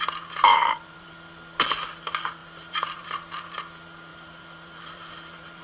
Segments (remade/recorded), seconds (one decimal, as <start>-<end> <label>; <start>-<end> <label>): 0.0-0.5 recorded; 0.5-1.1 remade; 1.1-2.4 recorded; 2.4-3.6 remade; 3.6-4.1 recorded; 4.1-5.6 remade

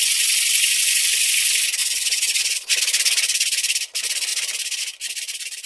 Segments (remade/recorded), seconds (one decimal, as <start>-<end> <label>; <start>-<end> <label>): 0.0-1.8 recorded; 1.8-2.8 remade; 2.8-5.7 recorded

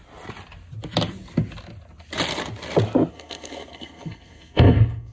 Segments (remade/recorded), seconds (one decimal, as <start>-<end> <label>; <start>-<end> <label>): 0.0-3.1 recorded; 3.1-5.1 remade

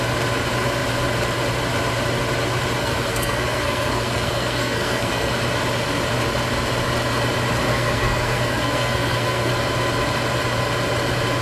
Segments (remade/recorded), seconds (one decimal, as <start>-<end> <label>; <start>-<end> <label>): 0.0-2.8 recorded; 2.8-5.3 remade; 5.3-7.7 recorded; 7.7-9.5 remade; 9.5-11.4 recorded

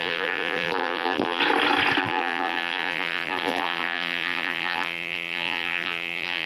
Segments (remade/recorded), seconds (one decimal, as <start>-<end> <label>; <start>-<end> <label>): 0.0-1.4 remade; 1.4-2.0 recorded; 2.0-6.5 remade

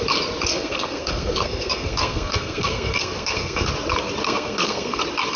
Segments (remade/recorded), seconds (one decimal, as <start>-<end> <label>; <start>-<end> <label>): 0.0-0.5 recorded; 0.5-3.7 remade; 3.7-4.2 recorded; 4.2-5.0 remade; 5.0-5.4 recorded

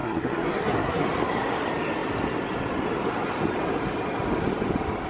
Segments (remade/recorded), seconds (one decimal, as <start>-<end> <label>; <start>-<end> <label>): 0.0-1.0 remade; 1.0-5.1 recorded

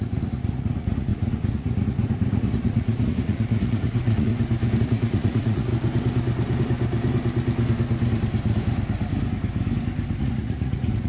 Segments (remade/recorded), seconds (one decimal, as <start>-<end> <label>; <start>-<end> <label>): 0.0-4.3 remade; 4.3-4.8 recorded; 4.8-5.7 remade; 5.7-10.2 recorded; 10.2-11.1 remade